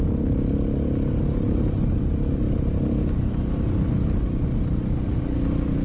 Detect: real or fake real